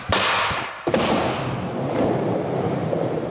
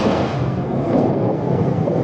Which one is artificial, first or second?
second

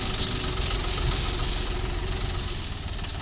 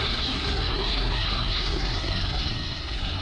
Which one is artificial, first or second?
second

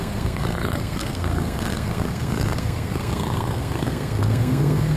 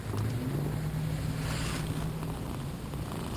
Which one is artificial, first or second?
first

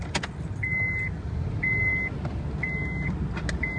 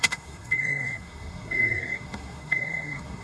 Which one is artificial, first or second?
second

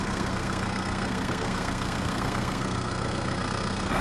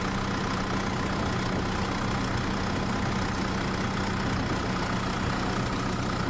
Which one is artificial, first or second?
first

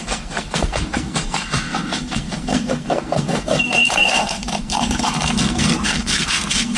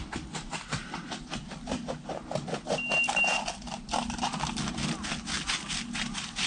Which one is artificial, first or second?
first